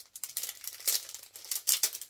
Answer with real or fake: real